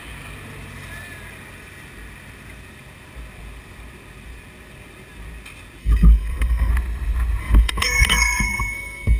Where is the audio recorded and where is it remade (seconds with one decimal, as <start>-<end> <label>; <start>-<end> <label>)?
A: 0.0-5.8 recorded; 5.8-6.7 remade; 6.7-7.4 recorded; 7.4-9.2 remade